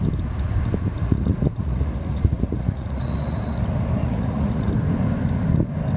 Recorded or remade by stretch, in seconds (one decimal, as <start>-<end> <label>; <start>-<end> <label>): 0.0-1.0 recorded; 1.0-3.6 remade; 3.6-4.0 recorded; 4.0-4.7 remade; 4.7-6.0 recorded